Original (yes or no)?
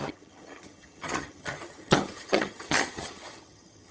no